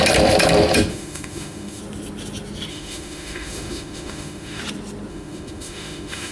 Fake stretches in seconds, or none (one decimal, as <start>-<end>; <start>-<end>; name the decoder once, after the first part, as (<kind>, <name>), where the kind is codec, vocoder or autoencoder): 0.9-1.8 (autoencoder, DAC-VAE); 2.7-4.6; 5.1-6.3